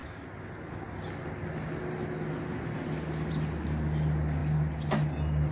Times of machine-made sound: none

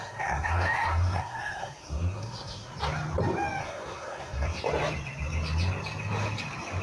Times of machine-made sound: 0.0-2.7 (codec, SNAC); 3.6-4.6